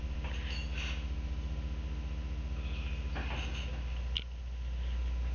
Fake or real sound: real